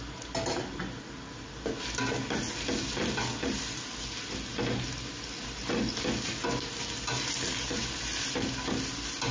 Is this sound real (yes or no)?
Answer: yes